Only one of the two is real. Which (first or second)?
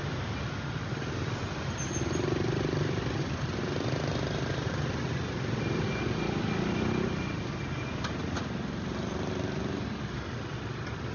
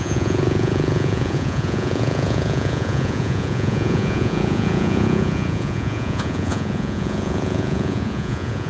first